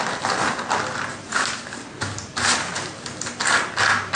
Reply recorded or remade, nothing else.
recorded